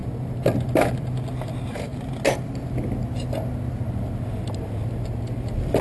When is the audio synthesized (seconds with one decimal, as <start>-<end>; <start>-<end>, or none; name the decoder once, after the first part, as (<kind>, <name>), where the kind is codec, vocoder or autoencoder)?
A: none